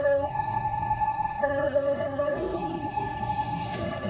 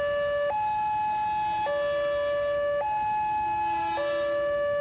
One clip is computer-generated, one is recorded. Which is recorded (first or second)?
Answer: second